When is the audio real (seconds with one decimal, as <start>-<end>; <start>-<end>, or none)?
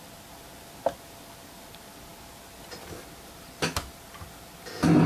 0.0-5.1